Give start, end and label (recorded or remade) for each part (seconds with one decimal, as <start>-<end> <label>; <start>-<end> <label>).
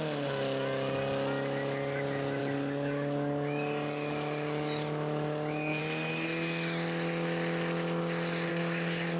0.0-2.4 recorded; 2.4-5.8 remade; 5.8-8.5 recorded; 8.5-9.2 remade